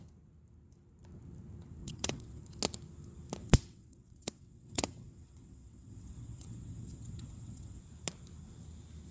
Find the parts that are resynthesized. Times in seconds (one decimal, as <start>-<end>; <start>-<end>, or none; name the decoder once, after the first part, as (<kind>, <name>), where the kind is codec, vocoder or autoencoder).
1.8-2.4 (vocoder, WaveNeXt); 3.4-7.8